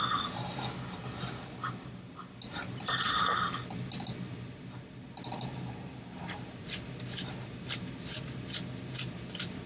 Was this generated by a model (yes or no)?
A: no